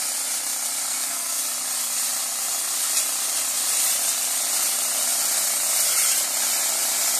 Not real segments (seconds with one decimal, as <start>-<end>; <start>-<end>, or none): 0.9-1.4